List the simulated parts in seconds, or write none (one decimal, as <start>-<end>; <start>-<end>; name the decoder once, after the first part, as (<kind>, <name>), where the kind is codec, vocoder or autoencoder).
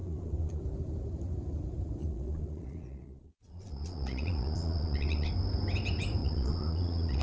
0.0-0.6 (vocoder, Vocos); 2.0-5.3; 6.2-7.2